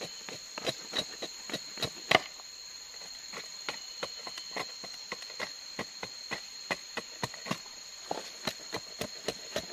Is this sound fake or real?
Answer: real